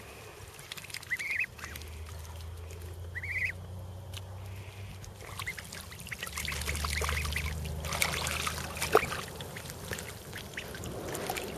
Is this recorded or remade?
recorded